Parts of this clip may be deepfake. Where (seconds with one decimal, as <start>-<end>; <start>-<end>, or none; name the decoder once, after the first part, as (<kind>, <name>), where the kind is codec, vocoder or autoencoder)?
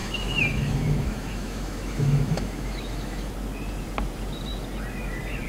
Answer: 0.0-3.3 (autoencoder, DAC-VAE)